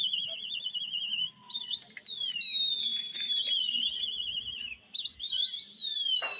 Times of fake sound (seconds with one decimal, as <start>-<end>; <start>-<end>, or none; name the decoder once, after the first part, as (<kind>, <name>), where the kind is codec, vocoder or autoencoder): 2.9-3.7 (vocoder, BigVGAN v2)